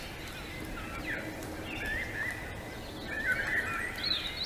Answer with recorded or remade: recorded